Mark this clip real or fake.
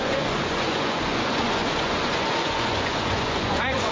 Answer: fake